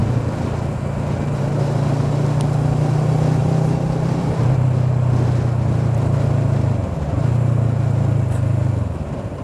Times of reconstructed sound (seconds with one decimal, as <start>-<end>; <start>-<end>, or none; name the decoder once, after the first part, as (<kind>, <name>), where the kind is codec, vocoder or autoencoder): 3.4-4.4 (vocoder, BigVGAN v2)